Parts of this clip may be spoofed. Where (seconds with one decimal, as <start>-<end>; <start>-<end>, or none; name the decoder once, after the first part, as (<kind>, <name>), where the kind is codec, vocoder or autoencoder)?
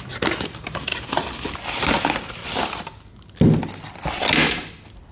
0.0-0.9 (vocoder, BigVGAN v2); 2.0-2.4